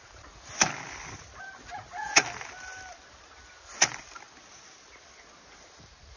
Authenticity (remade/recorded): recorded